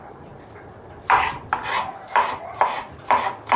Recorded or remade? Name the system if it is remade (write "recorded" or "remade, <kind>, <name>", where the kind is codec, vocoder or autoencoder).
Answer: recorded